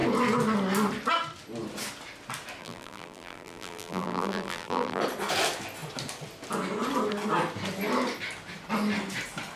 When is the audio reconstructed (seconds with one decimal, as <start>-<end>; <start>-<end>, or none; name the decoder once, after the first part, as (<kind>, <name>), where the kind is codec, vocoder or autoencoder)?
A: 2.6-5.0 (vocoder, BigVGAN v2)